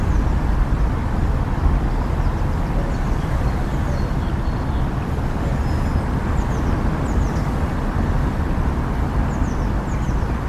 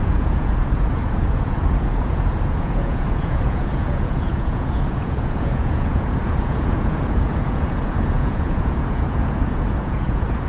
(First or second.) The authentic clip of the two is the first